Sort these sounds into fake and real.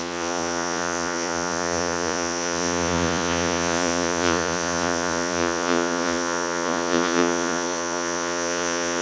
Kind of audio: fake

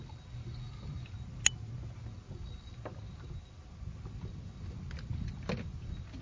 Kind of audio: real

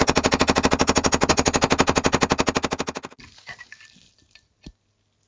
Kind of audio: real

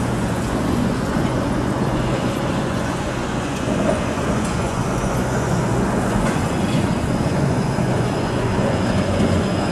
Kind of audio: fake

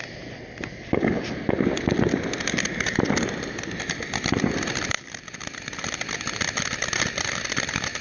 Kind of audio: real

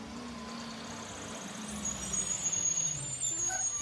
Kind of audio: real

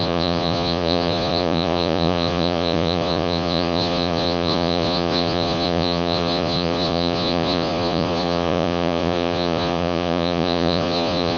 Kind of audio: fake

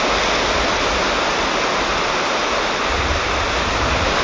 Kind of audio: real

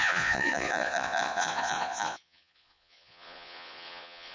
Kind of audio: fake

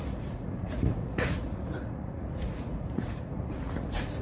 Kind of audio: fake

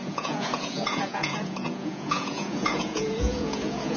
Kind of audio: fake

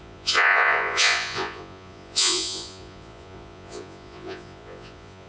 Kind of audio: fake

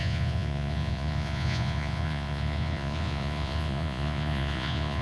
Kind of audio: fake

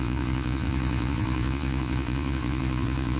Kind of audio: fake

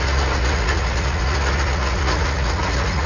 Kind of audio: fake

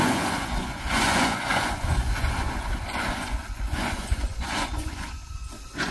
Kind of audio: fake